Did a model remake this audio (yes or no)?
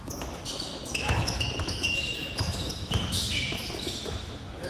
yes